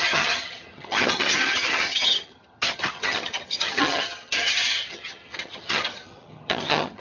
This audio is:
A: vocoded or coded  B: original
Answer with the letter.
A